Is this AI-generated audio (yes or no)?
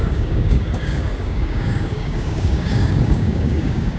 yes